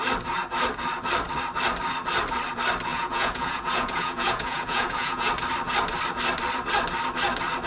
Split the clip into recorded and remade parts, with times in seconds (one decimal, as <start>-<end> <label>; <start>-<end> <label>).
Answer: 0.0-2.9 recorded; 2.9-5.3 remade; 5.3-7.7 recorded

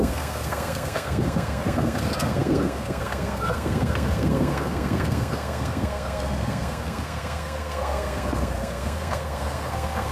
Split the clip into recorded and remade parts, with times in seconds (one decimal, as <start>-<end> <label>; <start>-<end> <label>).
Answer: 0.0-10.1 remade